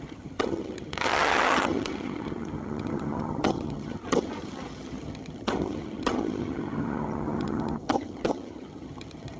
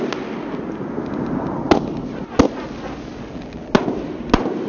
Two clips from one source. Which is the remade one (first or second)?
first